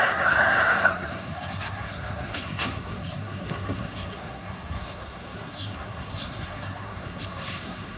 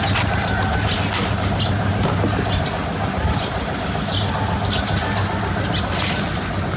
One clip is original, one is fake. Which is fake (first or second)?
first